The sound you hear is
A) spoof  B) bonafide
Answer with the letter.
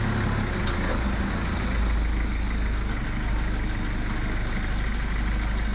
B